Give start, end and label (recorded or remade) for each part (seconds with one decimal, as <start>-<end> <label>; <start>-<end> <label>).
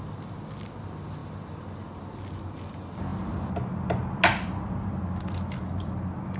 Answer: 0.0-6.4 recorded